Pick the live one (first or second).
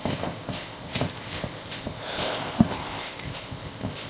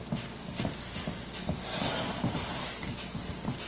second